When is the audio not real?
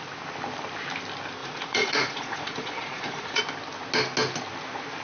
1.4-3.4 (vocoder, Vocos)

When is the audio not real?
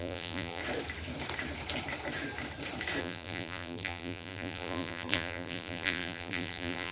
0.0-0.6 (vocoder, BigVGAN v2); 3.0-6.9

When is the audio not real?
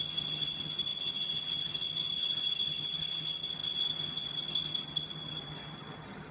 0.0-6.3 (vocoder, HiFi-GAN)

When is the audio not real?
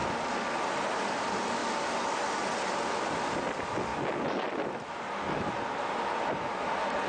none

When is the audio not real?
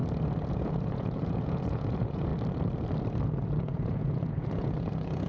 0.5-2.3 (vocoder, Vocos); 3.6-5.3